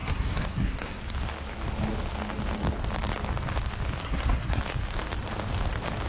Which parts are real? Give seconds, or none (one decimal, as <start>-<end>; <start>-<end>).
1.0-4.0; 4.6-6.1